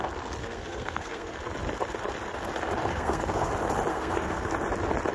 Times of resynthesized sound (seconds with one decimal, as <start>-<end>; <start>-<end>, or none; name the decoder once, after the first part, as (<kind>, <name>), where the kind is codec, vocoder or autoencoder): 0.4-1.4 (codec, SNAC); 2.9-3.5; 3.9-4.5